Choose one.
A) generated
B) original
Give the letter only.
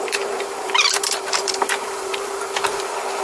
A